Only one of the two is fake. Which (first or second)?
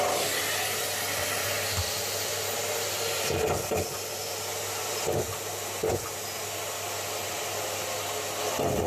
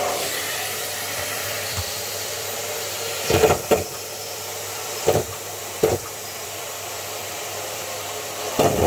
second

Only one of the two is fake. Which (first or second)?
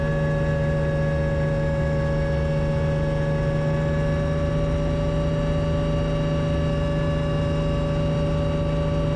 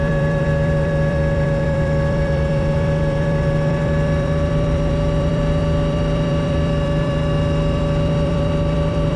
second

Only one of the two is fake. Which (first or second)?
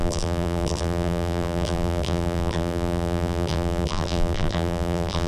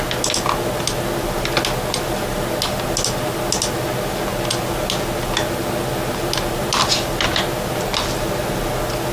first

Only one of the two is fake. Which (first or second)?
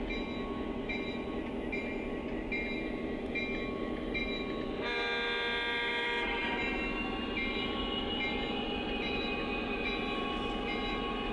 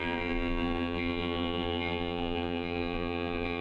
second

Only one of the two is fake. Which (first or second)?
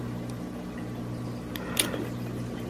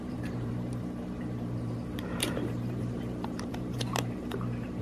second